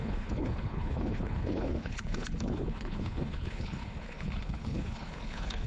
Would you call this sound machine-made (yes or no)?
yes